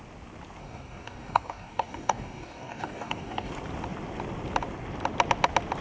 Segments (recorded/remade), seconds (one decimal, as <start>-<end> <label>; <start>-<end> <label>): 0.0-0.6 recorded; 0.6-3.5 remade; 3.5-5.8 recorded